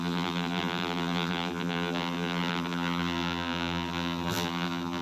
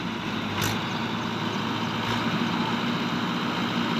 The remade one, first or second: first